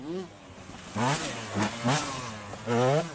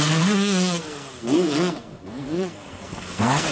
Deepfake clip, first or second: second